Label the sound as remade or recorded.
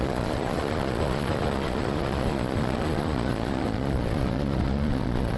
remade